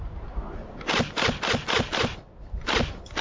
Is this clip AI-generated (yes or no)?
no